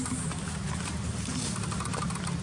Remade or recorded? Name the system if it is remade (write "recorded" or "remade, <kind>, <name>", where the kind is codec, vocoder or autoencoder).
recorded